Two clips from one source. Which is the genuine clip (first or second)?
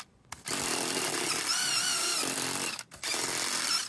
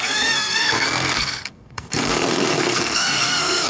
first